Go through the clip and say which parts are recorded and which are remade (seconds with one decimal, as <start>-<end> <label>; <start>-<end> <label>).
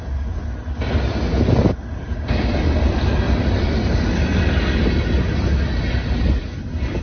0.0-2.0 recorded; 2.0-4.3 remade; 4.3-7.0 recorded